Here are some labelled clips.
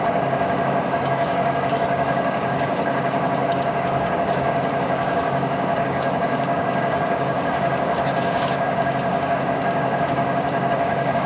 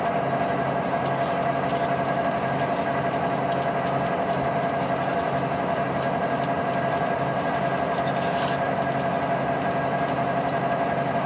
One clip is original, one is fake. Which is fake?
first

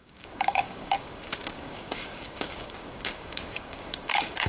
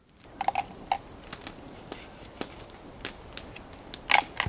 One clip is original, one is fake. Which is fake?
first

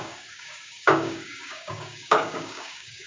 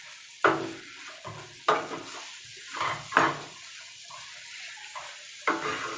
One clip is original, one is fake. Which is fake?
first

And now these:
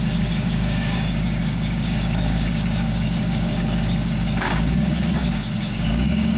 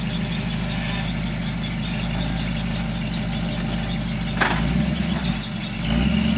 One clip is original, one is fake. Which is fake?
first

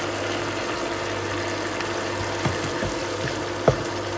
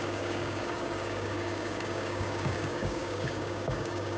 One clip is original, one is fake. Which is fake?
second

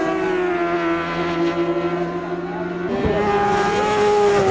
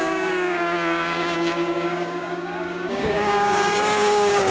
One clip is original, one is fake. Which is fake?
second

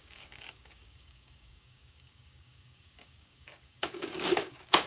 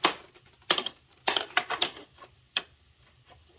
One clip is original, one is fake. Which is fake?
first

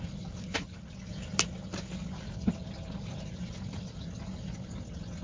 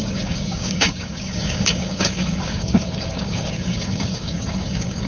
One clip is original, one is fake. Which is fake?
second